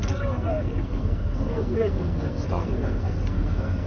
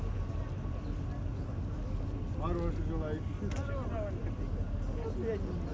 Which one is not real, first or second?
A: first